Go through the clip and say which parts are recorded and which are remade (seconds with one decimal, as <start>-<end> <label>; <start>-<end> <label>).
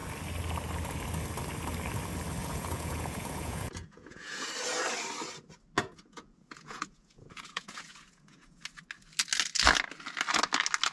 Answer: 0.0-2.4 recorded; 2.4-4.5 remade; 4.5-5.8 recorded; 5.8-8.6 remade; 8.6-10.9 recorded